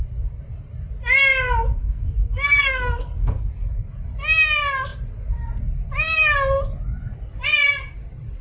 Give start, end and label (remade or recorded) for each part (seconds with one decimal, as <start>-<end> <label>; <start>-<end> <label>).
0.0-1.8 recorded; 1.8-3.5 remade; 3.5-8.4 recorded